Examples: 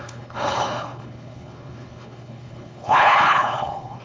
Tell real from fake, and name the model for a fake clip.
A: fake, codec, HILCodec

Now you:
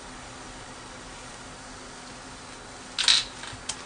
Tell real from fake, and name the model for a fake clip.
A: real